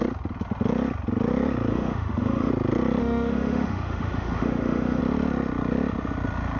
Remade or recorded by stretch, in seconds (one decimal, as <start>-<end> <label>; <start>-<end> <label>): 0.0-1.7 recorded; 1.7-2.5 remade; 2.5-3.0 recorded; 3.0-5.0 remade; 5.0-6.6 recorded